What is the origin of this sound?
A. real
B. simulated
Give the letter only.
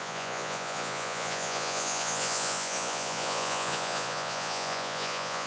B